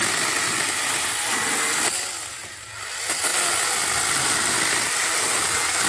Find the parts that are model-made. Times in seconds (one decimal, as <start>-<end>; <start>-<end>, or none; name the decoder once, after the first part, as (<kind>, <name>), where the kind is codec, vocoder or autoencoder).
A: none